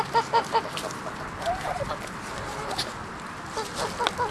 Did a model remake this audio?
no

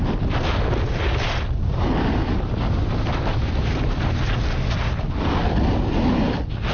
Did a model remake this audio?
no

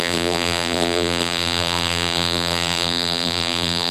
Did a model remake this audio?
yes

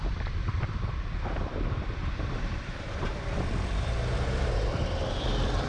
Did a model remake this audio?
yes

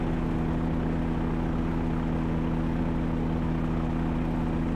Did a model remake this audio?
no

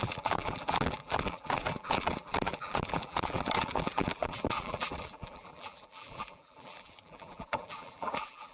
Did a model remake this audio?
yes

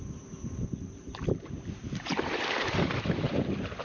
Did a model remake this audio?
yes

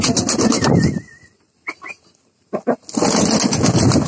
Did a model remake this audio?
no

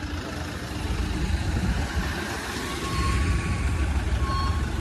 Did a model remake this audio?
yes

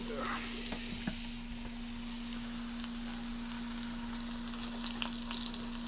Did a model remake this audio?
no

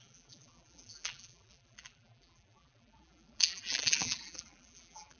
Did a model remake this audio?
yes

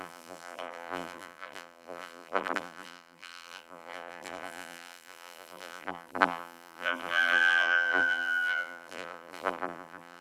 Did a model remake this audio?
yes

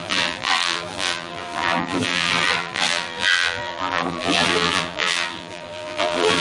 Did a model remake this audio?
yes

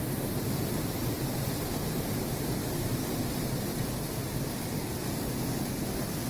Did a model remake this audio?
no